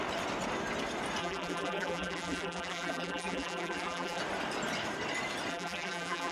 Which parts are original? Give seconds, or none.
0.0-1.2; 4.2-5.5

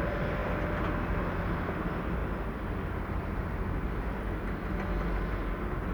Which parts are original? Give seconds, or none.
0.0-5.9

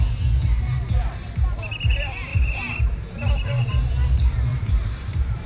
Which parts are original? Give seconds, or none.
0.0-2.3; 2.8-4.5